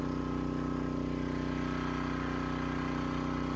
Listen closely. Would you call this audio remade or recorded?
recorded